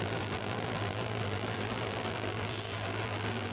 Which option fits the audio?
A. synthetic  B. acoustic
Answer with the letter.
A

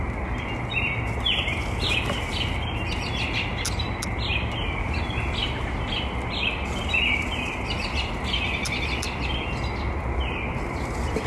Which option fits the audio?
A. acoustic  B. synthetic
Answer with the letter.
A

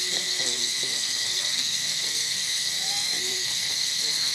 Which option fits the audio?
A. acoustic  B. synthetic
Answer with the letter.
B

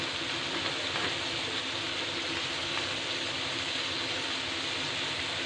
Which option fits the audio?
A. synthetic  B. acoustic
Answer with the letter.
B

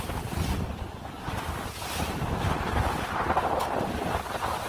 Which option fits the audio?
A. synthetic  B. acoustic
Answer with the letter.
B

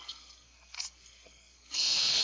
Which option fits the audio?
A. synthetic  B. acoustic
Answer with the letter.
A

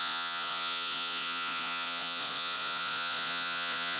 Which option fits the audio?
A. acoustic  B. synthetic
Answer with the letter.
B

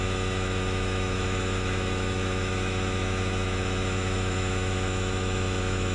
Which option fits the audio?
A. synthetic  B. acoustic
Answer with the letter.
A